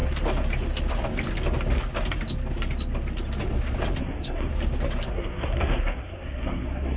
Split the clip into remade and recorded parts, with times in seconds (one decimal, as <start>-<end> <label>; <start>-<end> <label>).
0.0-4.0 recorded; 4.0-4.5 remade; 4.5-5.1 recorded; 5.1-7.0 remade